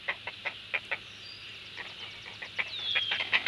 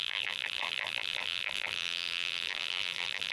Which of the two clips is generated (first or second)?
second